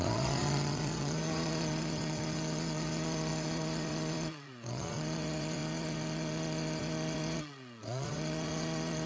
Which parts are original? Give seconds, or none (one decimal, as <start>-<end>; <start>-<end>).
none